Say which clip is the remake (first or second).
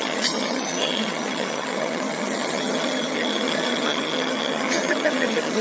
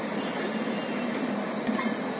first